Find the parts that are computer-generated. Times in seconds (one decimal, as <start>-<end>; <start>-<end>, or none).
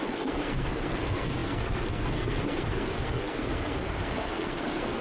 0.0-5.0